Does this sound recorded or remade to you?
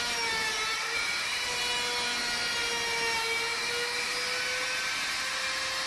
recorded